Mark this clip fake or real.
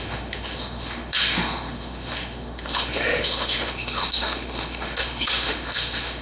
fake